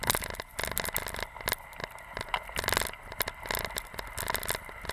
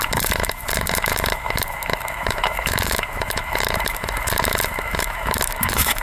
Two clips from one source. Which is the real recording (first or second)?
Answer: first